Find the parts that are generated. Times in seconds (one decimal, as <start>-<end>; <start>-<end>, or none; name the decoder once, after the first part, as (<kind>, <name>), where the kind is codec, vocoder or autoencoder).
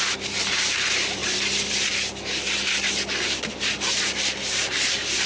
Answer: 0.0-1.2 (vocoder, BigVGAN v2); 3.5-5.3